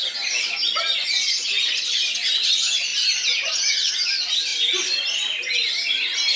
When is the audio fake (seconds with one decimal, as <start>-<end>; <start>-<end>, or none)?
4.5-5.4